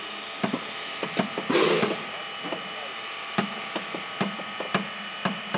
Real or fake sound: real